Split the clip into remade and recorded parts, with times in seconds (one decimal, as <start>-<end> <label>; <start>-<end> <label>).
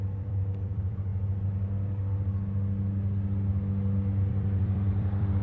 0.0-1.1 remade; 1.1-4.3 recorded; 4.3-5.4 remade